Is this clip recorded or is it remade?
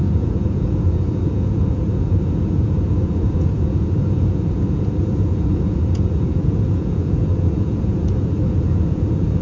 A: remade